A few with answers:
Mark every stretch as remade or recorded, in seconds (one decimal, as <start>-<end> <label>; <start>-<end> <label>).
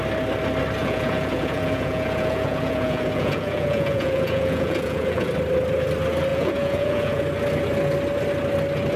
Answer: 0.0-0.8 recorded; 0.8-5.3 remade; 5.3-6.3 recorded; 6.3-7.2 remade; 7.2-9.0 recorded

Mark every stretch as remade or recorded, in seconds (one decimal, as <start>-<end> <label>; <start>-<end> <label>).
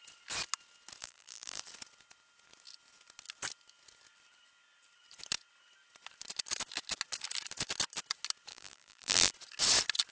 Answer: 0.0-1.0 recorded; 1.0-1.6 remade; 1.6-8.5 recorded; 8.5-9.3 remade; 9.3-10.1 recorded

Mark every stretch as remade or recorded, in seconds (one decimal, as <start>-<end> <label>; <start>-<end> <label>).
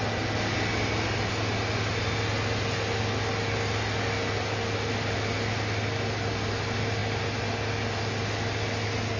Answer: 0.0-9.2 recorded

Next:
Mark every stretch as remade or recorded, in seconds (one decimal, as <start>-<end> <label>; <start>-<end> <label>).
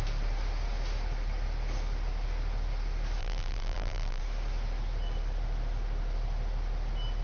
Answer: 0.0-3.2 recorded; 3.2-4.2 remade; 4.2-7.2 recorded